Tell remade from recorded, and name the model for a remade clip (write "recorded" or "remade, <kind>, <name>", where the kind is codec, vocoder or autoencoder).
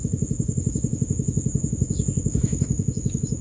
remade, autoencoder, DAC-VAE